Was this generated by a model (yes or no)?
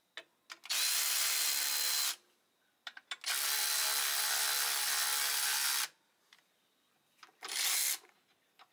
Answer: no